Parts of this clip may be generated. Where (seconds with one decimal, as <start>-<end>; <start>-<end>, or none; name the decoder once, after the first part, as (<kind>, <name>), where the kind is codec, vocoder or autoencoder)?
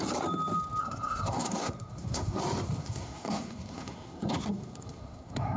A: 0.8-2.4 (codec, SNAC); 2.8-5.6